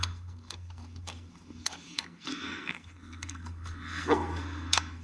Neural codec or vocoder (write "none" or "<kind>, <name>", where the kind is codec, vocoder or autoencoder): codec, SNAC